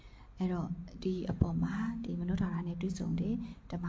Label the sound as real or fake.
real